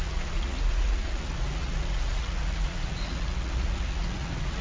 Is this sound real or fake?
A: fake